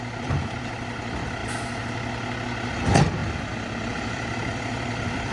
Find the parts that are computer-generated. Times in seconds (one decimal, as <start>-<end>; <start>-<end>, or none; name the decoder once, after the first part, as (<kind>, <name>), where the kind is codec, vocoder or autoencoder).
0.0-1.4 (vocoder, BigVGAN v2); 2.7-3.2; 4.1-5.3